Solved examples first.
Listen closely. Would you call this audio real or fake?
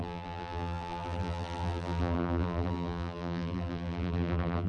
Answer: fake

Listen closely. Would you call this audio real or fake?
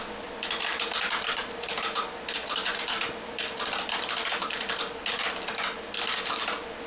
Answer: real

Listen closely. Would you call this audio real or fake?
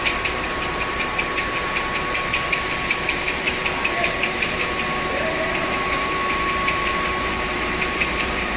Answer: fake